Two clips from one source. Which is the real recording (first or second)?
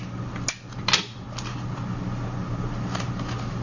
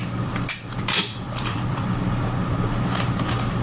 first